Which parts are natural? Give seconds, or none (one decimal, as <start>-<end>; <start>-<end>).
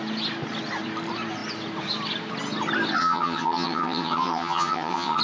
0.0-3.0